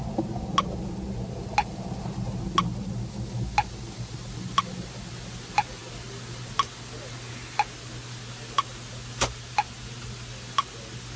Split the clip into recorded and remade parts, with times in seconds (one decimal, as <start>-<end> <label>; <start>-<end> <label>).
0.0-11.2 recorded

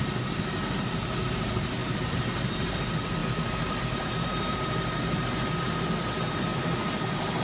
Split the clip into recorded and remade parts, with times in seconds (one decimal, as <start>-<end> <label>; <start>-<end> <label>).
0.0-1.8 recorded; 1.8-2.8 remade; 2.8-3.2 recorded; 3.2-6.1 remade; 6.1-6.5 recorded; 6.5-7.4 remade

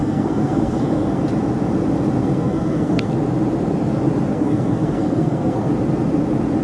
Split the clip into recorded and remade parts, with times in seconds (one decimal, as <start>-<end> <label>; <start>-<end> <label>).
0.0-1.2 remade; 1.2-2.2 recorded; 2.2-3.1 remade; 3.1-4.3 recorded; 4.3-5.7 remade; 5.7-6.6 recorded

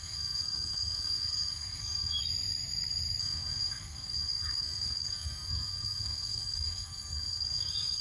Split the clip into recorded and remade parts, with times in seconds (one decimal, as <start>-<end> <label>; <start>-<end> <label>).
0.0-2.2 remade; 2.2-3.2 recorded; 3.2-8.0 remade

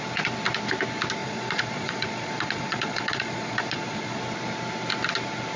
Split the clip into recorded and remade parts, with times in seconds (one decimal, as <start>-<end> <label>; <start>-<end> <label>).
0.0-1.2 recorded; 1.2-4.2 remade; 4.2-5.6 recorded